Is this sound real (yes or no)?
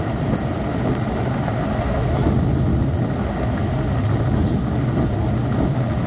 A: yes